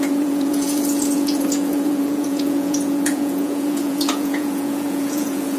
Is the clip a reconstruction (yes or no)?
yes